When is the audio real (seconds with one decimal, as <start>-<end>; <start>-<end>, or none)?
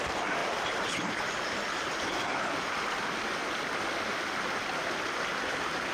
0.0-5.9